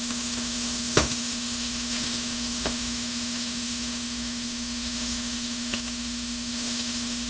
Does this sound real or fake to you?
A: fake